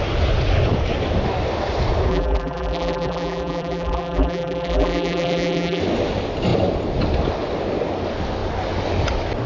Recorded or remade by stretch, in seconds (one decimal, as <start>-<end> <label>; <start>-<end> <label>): 0.0-2.1 recorded; 2.1-5.8 remade; 5.8-9.5 recorded